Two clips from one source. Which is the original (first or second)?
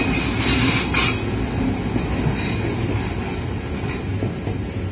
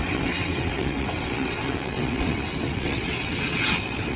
first